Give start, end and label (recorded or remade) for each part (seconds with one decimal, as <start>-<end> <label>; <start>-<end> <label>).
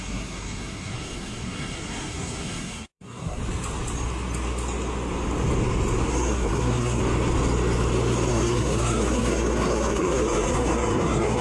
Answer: 0.0-3.4 remade; 3.4-6.1 recorded; 6.1-7.0 remade; 7.0-8.3 recorded; 8.3-11.4 remade